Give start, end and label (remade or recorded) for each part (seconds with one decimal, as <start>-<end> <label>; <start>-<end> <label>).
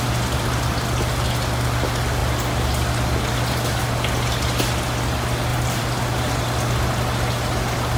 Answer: 0.0-5.5 recorded; 5.5-6.3 remade; 6.3-8.0 recorded